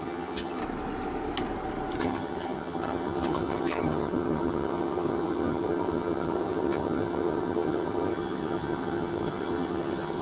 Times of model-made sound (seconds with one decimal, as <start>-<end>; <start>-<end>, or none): 0.0-0.6; 2.0-10.2

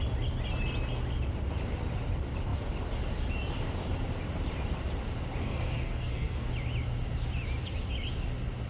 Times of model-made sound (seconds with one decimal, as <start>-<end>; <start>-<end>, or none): 5.4-6.5